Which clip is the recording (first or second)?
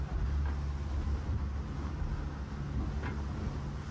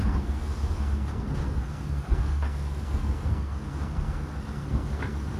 first